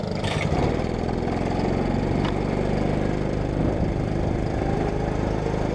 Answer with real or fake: real